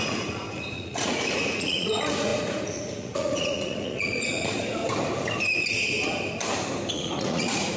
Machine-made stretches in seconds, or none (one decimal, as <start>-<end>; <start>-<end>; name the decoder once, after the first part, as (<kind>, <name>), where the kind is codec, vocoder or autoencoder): 0.0-4.8 (vocoder, Vocos); 6.9-7.8